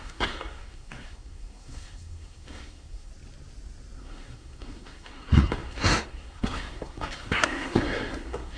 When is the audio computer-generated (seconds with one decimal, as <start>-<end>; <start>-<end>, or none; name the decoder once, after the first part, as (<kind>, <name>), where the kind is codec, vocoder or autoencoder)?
0.0-3.1 (codec, SNAC); 4.0-8.6